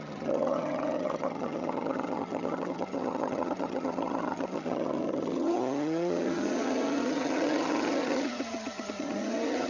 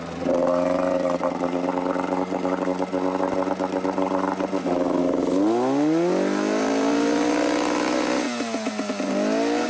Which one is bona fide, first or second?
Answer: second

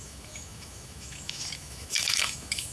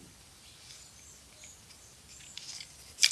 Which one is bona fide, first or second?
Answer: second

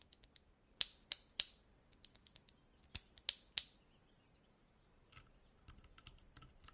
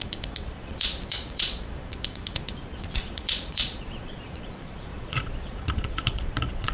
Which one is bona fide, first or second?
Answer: first